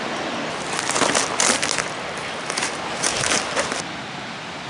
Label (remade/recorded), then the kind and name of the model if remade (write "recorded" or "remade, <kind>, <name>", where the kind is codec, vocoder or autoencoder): recorded